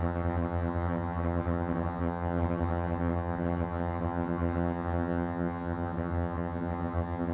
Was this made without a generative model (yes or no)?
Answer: no